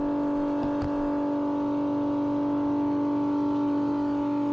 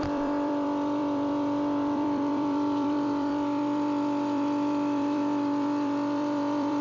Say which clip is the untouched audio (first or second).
first